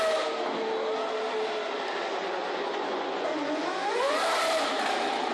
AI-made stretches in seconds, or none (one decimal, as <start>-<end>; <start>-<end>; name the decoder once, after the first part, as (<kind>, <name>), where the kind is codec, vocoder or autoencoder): 2.1-4.2 (vocoder, Vocos)